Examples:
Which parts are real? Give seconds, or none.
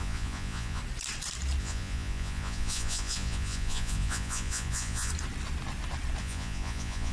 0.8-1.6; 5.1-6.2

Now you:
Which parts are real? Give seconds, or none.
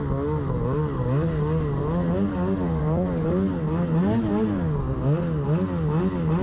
0.0-2.3; 2.8-6.4